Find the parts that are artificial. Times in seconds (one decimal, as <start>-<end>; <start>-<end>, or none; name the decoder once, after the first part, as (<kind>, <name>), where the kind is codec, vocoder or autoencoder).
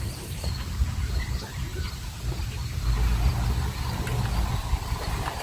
0.0-1.7 (vocoder, BigVGAN v2); 4.9-5.4